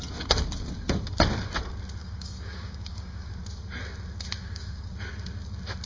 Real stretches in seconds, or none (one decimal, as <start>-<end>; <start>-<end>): 0.0-2.0; 3.3-4.4; 4.9-5.9